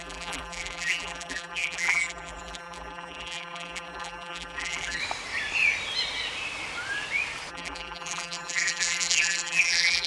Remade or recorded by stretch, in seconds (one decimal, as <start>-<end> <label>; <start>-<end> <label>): 0.0-5.0 remade; 5.0-7.5 recorded; 7.5-10.1 remade